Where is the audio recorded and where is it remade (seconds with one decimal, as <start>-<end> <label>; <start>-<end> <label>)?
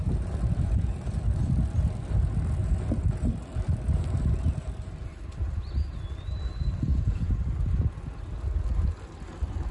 0.0-6.9 recorded; 6.9-7.4 remade; 7.4-9.7 recorded